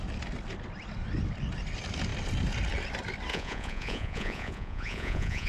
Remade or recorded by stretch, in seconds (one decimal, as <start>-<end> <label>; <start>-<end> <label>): 0.0-3.3 recorded; 3.3-5.5 remade